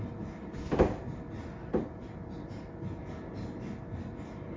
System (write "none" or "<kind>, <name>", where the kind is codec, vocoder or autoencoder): none